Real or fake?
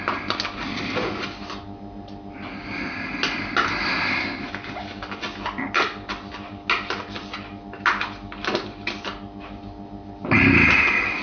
real